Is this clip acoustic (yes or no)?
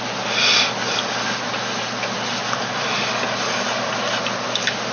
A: yes